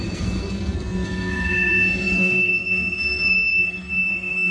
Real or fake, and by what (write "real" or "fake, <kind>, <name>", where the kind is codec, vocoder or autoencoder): fake, codec, SNAC